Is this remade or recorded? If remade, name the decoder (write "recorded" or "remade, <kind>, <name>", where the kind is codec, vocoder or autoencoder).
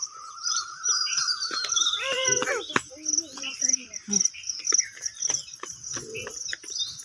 remade, vocoder, BigVGAN v2